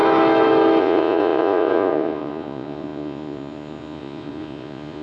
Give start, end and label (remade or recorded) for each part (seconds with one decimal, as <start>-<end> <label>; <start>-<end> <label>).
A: 0.0-0.8 recorded; 0.8-5.0 remade